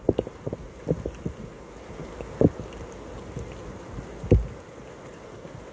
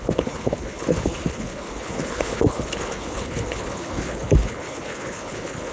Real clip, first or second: first